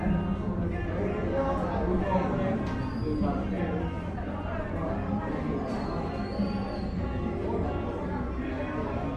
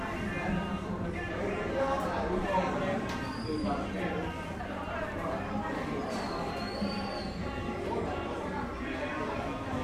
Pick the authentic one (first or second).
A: first